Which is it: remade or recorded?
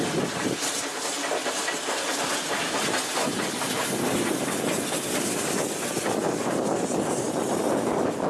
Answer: recorded